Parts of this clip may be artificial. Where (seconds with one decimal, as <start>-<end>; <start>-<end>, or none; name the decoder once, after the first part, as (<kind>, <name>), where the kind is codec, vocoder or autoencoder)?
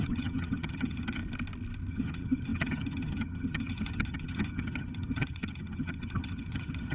0.0-1.2 (vocoder, HiFi-GAN); 1.9-6.9